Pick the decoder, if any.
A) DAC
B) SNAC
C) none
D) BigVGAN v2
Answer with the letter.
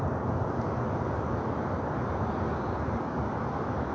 C